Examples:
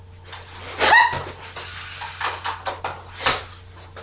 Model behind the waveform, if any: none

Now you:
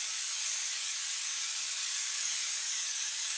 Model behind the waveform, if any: codec, DAC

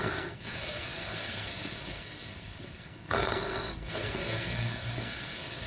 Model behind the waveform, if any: codec, SNAC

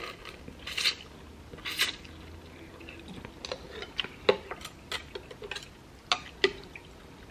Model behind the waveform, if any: none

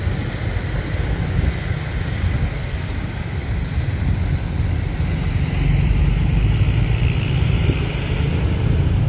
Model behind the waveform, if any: none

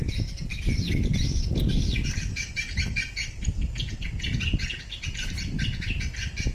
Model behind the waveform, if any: none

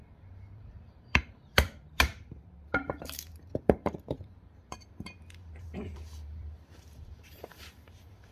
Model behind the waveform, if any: vocoder, BigVGAN v2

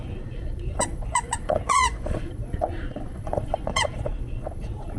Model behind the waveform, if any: vocoder, Vocos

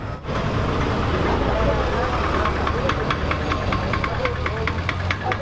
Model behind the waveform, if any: none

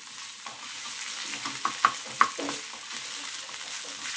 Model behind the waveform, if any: none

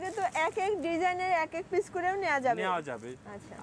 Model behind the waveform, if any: none